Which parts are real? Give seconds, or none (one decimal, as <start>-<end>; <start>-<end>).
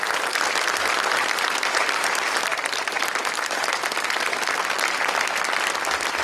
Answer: 0.0-1.6; 3.7-6.2